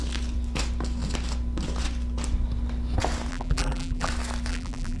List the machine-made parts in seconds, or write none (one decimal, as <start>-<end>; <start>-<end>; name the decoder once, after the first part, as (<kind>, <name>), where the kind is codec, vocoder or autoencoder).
3.3-4.1 (vocoder, BigVGAN v2); 4.5-5.0